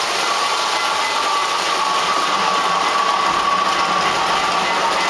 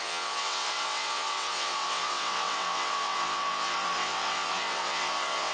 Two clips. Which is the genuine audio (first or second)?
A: first